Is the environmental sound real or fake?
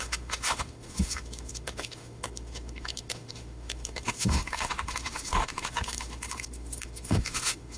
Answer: fake